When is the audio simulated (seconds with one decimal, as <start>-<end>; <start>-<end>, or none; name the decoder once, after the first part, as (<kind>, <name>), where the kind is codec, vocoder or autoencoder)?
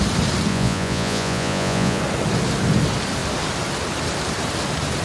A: 0.5-2.0 (vocoder, Vocos)